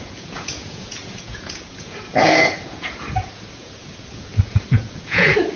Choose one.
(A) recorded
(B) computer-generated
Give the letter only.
B